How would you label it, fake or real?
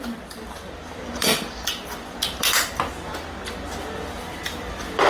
fake